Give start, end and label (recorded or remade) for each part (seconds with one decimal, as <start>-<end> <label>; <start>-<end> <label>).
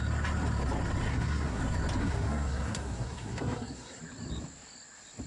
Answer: 0.0-1.1 recorded; 1.1-1.6 remade; 1.6-2.0 recorded; 2.0-4.0 remade; 4.0-5.3 recorded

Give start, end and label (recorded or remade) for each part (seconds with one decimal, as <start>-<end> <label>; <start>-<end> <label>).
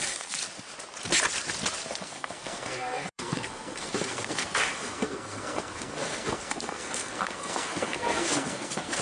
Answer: 0.0-0.4 remade; 0.4-1.9 recorded; 1.9-9.0 remade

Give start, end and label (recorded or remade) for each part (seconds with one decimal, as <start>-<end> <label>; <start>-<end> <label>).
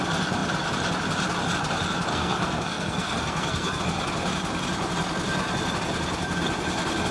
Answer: 0.0-2.1 recorded; 2.1-3.8 remade; 3.8-7.1 recorded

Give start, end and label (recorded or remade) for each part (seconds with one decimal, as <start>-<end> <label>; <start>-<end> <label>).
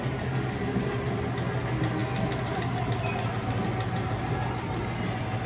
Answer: 0.0-5.5 recorded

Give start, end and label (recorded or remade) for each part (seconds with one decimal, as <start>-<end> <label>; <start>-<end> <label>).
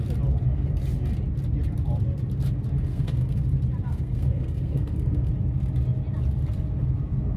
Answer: 0.0-2.9 recorded; 2.9-3.4 remade; 3.4-3.9 recorded; 3.9-5.3 remade; 5.3-7.4 recorded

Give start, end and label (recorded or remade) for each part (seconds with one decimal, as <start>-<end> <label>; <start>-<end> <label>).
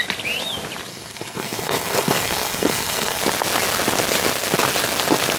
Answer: 0.0-0.9 recorded; 0.9-3.2 remade; 3.2-5.4 recorded